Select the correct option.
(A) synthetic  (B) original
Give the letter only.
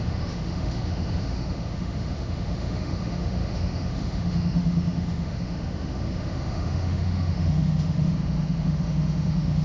A